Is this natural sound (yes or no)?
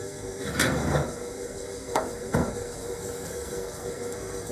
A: no